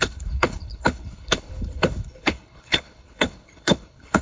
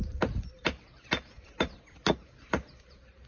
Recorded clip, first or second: second